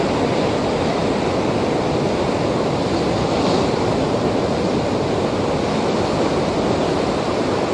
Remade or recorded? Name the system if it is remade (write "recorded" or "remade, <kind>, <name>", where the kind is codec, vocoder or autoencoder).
recorded